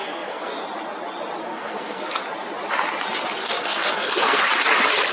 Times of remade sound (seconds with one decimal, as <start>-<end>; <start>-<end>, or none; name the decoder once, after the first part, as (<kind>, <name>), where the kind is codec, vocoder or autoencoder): 0.0-0.5 (codec, SNAC); 1.4-2.2; 3.4-4.4